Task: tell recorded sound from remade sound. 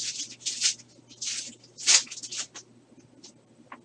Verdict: recorded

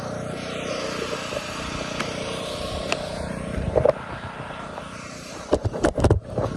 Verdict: remade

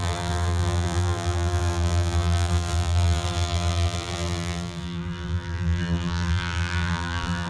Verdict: remade